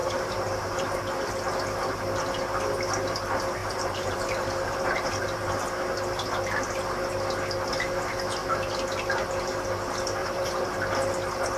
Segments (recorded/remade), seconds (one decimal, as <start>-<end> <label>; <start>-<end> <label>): 0.0-1.0 remade; 1.0-3.6 recorded; 3.6-5.6 remade; 5.6-10.2 recorded; 10.2-10.9 remade; 10.9-11.6 recorded